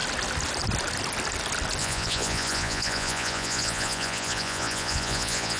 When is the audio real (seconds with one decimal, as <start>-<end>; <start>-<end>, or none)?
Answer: 0.0-1.8